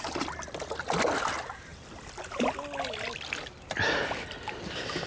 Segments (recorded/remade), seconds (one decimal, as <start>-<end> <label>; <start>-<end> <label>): 0.0-5.1 recorded